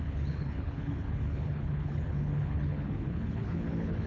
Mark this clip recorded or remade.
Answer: remade